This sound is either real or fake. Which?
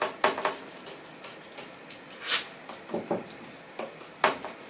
real